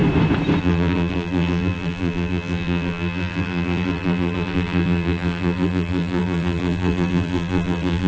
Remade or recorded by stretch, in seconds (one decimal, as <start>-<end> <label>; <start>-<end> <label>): 0.0-0.6 recorded; 0.6-8.1 remade